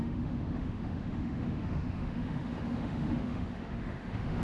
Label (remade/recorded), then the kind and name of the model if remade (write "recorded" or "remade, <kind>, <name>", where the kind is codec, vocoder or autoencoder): remade, autoencoder, DAC-VAE